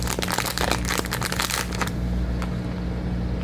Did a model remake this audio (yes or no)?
no